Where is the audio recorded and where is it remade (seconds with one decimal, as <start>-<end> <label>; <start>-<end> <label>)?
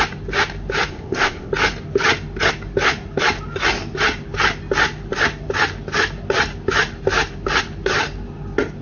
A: 0.0-0.9 recorded; 0.9-1.5 remade; 1.5-8.8 recorded